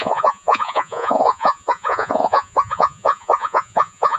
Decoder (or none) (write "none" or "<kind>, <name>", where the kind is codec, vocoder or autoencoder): vocoder, Vocos